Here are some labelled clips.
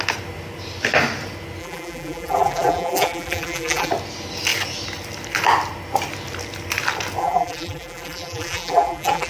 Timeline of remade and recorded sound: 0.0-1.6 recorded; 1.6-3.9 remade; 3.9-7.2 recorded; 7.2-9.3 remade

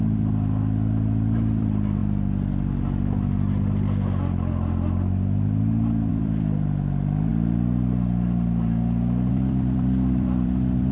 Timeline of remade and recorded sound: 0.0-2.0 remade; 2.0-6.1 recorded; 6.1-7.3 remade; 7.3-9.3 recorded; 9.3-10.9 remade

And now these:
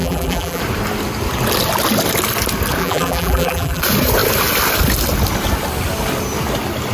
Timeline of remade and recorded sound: 0.0-0.6 remade; 0.6-2.8 recorded; 2.8-3.8 remade; 3.8-6.9 recorded

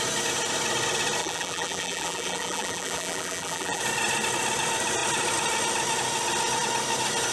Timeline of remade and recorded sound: 0.0-1.2 recorded; 1.2-3.8 remade; 3.8-7.3 recorded

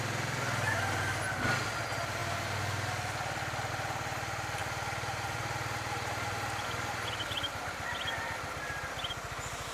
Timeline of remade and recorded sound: 0.0-9.7 recorded

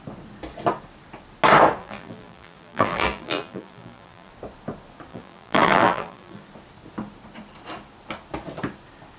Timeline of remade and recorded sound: 0.0-1.8 recorded; 1.8-4.3 remade; 4.3-5.1 recorded; 5.1-6.4 remade; 6.4-9.2 recorded